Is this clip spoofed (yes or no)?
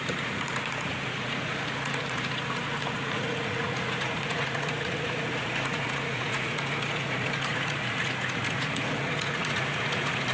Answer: yes